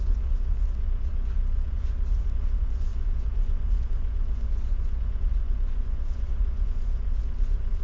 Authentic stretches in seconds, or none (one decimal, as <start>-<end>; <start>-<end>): none